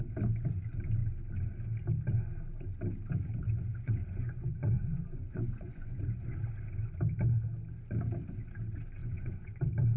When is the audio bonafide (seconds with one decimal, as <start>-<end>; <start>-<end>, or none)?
0.0-3.7; 6.4-9.0; 9.5-10.0